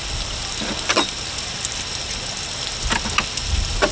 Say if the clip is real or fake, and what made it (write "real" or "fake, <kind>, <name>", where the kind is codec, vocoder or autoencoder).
real